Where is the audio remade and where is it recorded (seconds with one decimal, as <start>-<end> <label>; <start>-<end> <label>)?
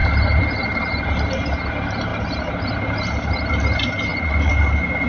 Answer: 0.0-4.1 recorded; 4.1-4.6 remade; 4.6-5.1 recorded